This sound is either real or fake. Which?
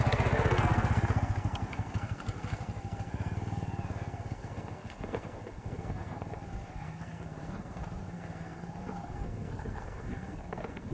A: fake